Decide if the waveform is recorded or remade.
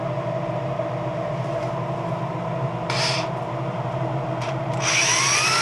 recorded